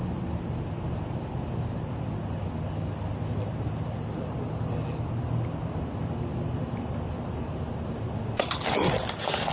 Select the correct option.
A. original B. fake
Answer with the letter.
A